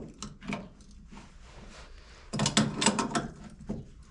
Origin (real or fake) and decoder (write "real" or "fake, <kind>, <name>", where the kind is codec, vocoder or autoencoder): real